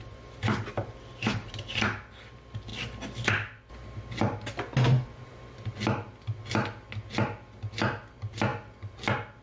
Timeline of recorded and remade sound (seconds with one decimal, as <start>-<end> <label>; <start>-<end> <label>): 0.0-9.4 recorded